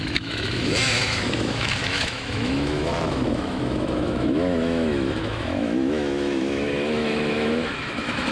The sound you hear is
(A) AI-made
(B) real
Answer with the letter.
A